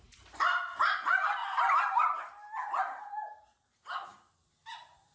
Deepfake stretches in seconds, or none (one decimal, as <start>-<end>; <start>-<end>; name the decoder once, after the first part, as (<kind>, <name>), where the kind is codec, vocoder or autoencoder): none